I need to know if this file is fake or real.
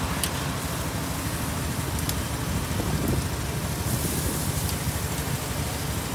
real